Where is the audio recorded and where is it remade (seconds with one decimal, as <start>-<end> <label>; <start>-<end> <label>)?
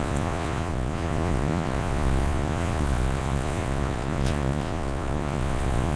0.0-6.0 remade